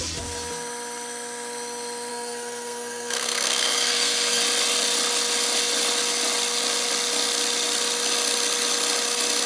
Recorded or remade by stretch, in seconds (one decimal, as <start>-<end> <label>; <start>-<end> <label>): 0.0-2.1 recorded; 2.1-4.4 remade; 4.4-9.5 recorded